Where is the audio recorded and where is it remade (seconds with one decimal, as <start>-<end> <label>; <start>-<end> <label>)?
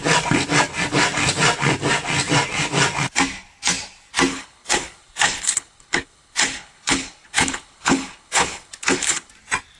0.0-4.3 recorded; 4.3-9.3 remade; 9.3-9.8 recorded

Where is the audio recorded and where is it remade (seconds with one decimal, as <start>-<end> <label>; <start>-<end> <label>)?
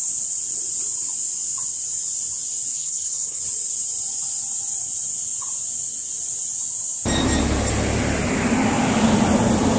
0.0-2.7 recorded; 2.7-3.4 remade; 3.4-9.8 recorded